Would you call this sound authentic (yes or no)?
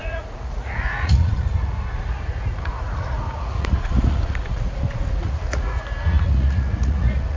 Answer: no